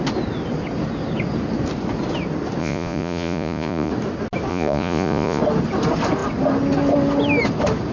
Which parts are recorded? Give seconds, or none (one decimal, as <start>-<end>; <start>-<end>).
0.0-2.6; 3.9-4.5; 5.4-7.9